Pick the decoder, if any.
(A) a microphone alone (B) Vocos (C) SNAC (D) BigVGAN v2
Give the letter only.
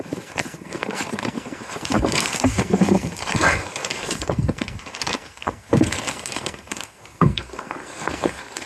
C